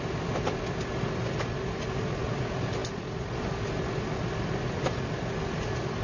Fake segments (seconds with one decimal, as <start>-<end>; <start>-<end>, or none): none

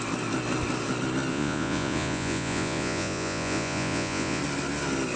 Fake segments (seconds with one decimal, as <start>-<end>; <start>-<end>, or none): 1.3-4.4

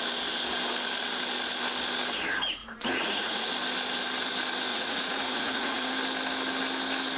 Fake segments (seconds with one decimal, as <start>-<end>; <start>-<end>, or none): 2.6-3.5; 4.7-5.9

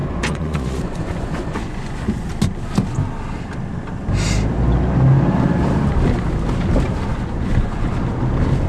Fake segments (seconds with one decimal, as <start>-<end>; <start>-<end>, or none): 0.0-2.3; 7.1-7.9

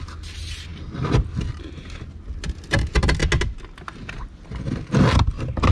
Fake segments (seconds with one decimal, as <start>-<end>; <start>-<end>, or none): none

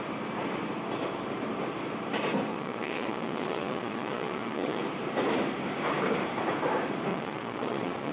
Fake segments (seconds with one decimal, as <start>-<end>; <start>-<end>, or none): 2.5-4.8; 7.1-8.1

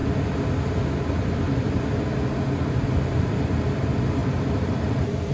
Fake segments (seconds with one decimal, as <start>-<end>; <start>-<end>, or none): none